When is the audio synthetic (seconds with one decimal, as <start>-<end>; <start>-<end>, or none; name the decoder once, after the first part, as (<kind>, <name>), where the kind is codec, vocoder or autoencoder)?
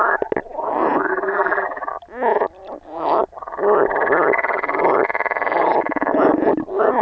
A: 1.1-1.9 (vocoder, BigVGAN v2)